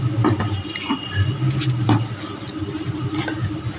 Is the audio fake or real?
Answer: real